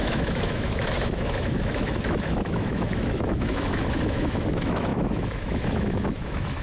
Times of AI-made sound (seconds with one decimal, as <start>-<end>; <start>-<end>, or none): 0.0-6.6